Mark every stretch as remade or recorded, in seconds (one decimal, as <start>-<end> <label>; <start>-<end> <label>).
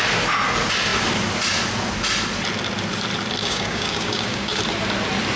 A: 0.0-3.4 recorded; 3.4-4.6 remade; 4.6-5.4 recorded